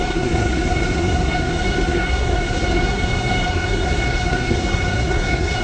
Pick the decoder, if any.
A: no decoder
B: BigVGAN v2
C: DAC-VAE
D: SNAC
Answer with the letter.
D